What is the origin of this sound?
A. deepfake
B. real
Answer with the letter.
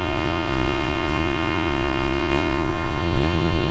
A